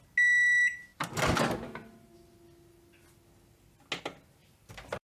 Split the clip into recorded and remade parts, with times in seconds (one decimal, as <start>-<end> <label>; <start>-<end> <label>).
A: 0.0-4.4 recorded; 4.4-5.1 remade